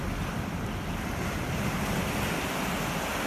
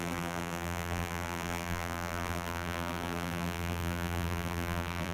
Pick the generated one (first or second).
second